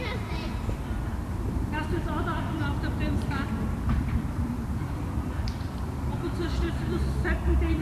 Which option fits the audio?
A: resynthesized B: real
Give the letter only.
A